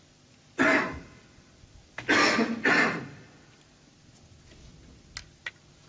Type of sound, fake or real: real